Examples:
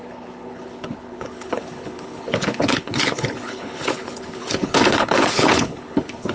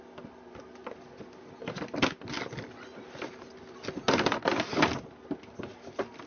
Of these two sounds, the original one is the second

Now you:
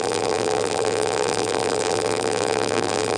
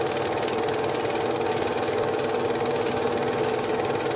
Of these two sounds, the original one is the second